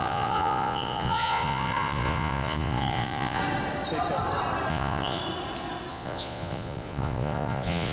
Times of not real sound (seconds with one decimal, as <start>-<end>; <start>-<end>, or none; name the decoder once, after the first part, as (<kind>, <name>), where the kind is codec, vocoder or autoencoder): 0.0-3.4 (vocoder, Vocos); 4.7-5.2; 5.9-7.9